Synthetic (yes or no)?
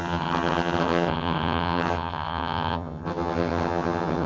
yes